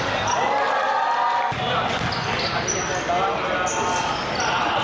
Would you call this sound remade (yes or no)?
no